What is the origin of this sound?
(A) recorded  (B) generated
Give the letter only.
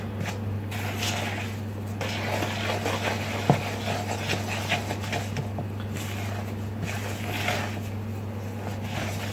A